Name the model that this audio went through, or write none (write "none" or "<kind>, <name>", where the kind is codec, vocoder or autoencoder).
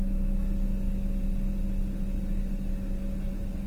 none